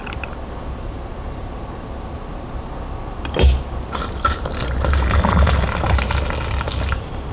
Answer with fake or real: real